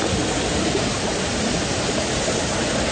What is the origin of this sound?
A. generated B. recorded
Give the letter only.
B